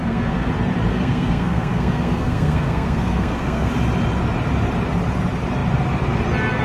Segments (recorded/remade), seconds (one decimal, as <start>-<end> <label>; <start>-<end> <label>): 0.0-0.5 remade; 0.5-0.9 recorded; 0.9-3.7 remade; 3.7-6.6 recorded